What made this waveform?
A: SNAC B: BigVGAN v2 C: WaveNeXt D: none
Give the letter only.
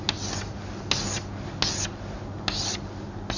D